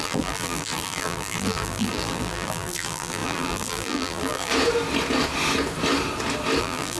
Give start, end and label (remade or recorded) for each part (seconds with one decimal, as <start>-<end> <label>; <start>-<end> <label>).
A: 0.0-4.5 remade; 4.5-6.6 recorded; 6.6-7.0 remade